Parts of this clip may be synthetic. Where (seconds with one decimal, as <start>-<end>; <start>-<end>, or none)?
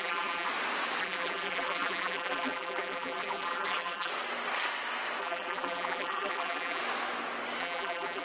0.0-0.5; 1.0-4.1; 5.2-6.8; 7.6-8.2